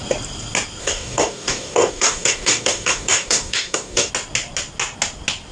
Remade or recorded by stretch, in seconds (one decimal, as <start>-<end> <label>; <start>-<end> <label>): 0.0-0.8 recorded; 0.8-4.1 remade; 4.1-5.5 recorded